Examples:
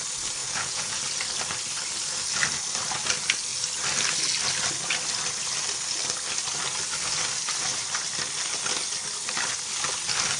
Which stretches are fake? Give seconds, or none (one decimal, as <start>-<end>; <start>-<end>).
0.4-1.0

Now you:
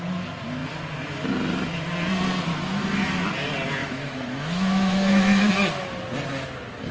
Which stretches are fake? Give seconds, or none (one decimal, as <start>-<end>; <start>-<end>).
2.5-3.2; 3.8-5.5

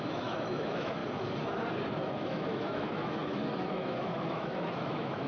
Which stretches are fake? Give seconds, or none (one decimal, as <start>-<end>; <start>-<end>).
0.0-1.0; 2.0-5.3

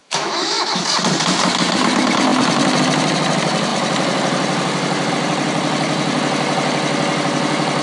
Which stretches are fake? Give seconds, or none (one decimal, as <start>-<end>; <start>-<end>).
0.0-0.8

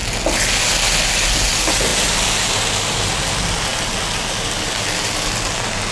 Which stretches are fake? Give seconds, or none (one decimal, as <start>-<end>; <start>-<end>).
none

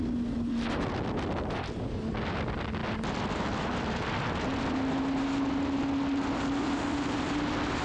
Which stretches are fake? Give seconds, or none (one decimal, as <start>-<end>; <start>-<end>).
none

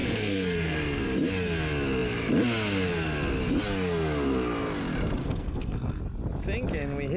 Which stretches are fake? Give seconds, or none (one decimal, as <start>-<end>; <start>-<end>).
0.0-1.0; 5.2-6.0